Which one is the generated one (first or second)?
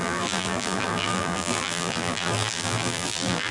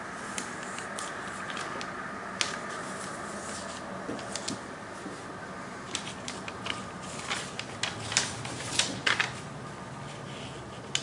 first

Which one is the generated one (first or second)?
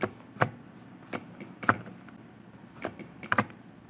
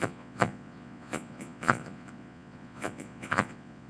second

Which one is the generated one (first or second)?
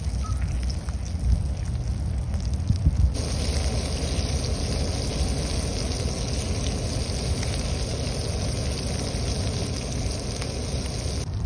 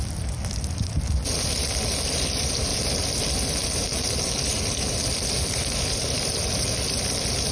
second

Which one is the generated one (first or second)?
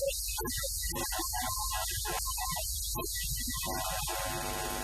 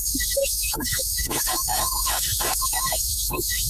second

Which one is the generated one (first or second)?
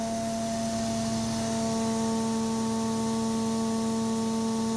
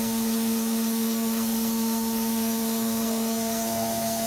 second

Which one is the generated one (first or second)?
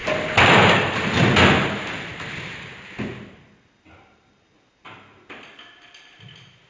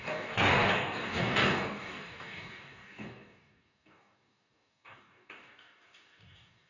second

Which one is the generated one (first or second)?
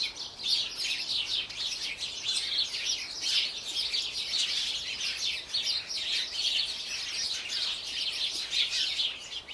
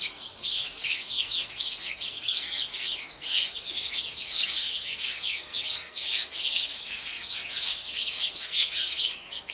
second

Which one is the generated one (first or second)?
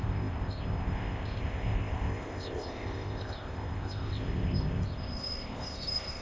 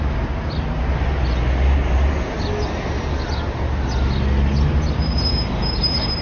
first